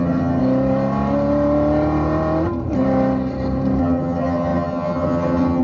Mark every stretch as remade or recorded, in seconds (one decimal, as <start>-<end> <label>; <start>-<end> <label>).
0.0-0.4 remade; 0.4-3.8 recorded; 3.8-5.6 remade